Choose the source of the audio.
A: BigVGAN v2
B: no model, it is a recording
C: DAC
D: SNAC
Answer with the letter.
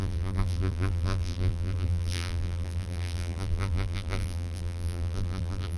A